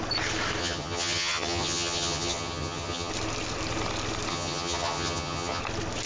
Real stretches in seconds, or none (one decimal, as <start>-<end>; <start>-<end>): 0.0-0.6; 3.1-4.3; 5.6-6.1